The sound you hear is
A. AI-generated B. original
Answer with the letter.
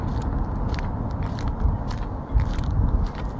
B